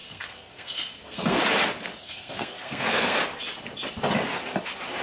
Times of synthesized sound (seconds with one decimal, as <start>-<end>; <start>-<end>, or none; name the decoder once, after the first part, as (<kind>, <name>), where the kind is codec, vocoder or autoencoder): 0.0-1.4 (codec, SNAC); 2.0-3.2